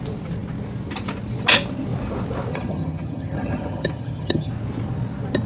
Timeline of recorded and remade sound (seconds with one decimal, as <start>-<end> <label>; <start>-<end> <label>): 0.0-2.5 recorded; 2.5-4.5 remade; 4.5-5.5 recorded